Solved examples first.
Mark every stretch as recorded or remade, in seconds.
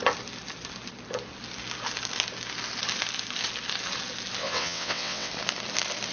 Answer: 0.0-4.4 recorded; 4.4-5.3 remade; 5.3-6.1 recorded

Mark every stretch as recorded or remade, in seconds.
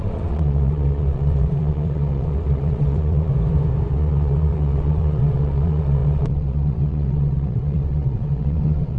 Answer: 0.0-3.3 remade; 3.3-3.9 recorded; 3.9-9.0 remade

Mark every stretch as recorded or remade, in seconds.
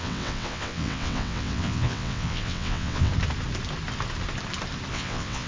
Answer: 0.0-3.1 remade; 3.1-4.9 recorded; 4.9-5.5 remade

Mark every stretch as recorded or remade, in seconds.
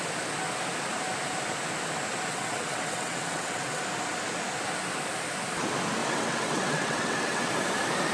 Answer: 0.0-2.3 recorded; 2.3-3.8 remade; 3.8-6.0 recorded; 6.0-7.5 remade; 7.5-8.1 recorded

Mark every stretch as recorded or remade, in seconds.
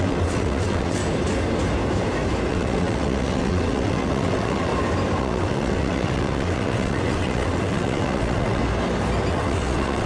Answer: 0.0-1.0 remade; 1.0-2.5 recorded; 2.5-4.7 remade; 4.7-5.2 recorded; 5.2-8.6 remade; 8.6-9.3 recorded; 9.3-10.1 remade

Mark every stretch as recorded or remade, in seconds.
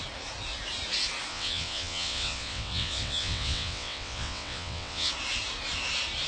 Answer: 0.0-1.3 recorded; 1.3-5.1 remade; 5.1-6.3 recorded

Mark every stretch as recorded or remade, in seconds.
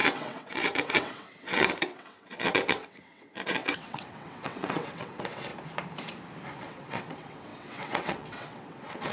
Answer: 0.0-5.5 remade; 5.5-6.6 recorded; 6.6-9.1 remade